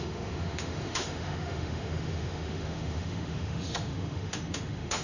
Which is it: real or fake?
fake